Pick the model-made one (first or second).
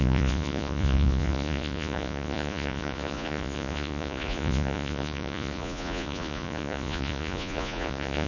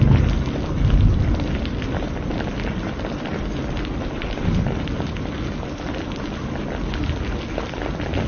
first